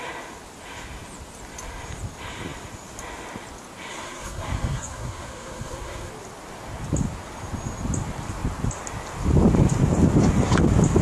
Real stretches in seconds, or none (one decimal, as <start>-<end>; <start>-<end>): 0.0-3.9; 6.1-11.0